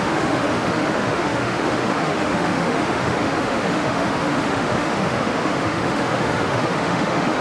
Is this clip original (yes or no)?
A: no